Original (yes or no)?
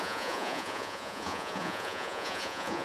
no